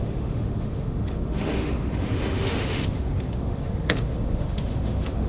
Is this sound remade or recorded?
remade